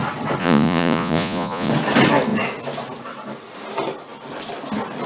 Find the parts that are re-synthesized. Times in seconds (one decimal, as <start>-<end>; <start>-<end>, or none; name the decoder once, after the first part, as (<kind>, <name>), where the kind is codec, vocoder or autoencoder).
0.4-1.7 (vocoder, Vocos)